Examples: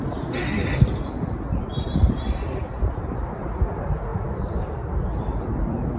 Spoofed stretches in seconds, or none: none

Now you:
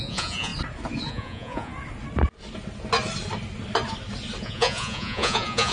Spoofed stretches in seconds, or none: 0.0-0.5 (vocoder, Vocos); 1.1-1.7; 4.4-5.7

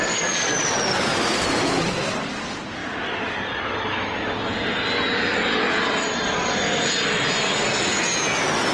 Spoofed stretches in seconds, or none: none

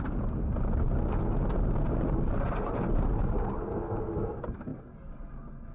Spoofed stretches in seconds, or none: none

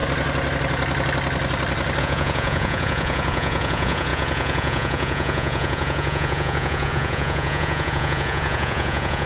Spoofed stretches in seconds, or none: 2.0-9.3 (vocoder, Vocos)

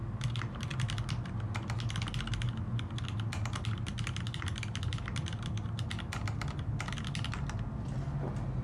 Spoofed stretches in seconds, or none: none

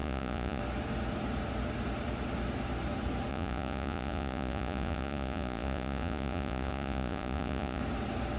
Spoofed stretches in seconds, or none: 0.0-0.6 (vocoder, Vocos); 3.3-7.8